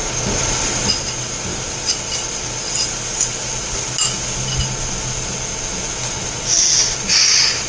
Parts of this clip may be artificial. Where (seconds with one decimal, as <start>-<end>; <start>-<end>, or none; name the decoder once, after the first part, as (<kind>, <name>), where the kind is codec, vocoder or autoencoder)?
1.5-2.5 (vocoder, BigVGAN v2); 6.8-7.7